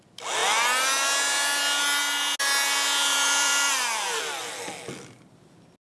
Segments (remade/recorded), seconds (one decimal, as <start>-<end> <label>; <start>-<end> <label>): 0.0-3.1 recorded; 3.1-4.2 remade; 4.2-5.9 recorded